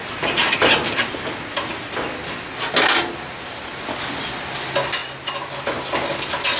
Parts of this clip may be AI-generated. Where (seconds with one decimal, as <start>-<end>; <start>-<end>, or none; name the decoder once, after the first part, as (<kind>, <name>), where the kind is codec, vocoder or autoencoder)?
none